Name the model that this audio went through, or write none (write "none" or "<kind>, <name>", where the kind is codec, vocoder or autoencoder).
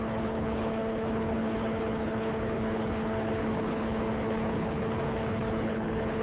codec, HILCodec